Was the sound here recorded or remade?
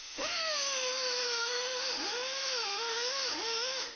remade